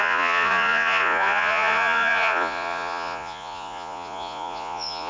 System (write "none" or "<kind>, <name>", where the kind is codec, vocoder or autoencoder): vocoder, Vocos